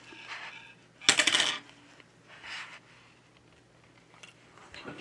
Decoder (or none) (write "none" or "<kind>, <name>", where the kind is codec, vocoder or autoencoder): none